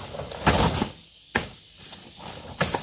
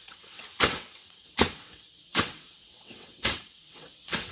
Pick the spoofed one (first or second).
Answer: second